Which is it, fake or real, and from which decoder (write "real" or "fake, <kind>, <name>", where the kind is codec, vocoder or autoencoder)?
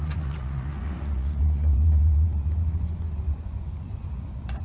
fake, vocoder, Vocos